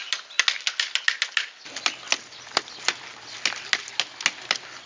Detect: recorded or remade recorded